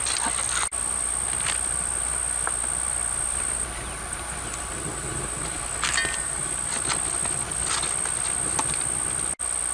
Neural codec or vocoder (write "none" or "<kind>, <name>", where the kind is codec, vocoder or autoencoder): none